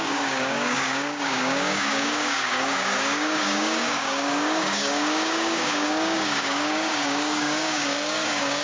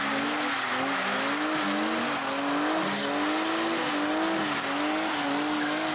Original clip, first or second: second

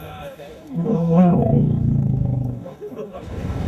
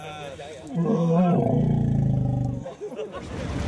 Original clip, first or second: second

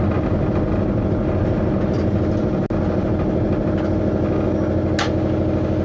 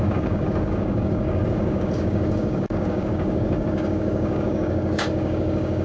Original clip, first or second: first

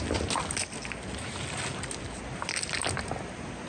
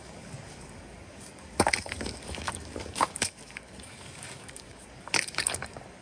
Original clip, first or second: first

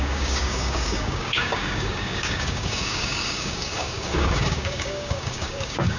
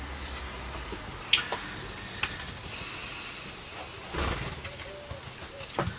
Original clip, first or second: second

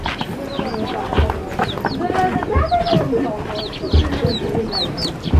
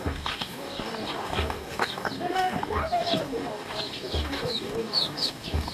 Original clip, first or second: first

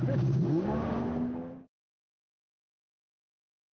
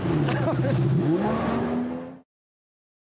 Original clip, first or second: second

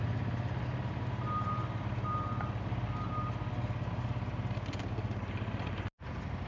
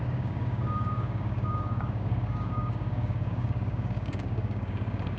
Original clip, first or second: first